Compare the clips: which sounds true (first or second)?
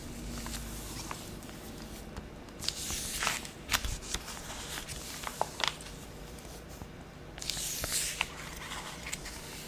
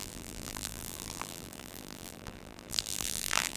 first